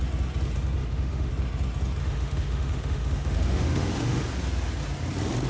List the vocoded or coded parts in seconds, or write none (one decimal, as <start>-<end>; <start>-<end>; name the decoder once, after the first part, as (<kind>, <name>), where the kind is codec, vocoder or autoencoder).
0.8-1.3 (autoencoder, DAC-VAE); 2.0-4.2